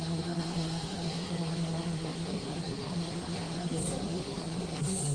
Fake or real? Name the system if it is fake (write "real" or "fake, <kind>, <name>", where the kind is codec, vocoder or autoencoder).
fake, codec, SNAC